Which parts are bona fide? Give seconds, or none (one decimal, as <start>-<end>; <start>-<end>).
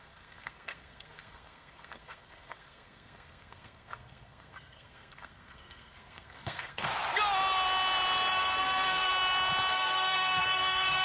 6.9-8.3; 9.1-9.7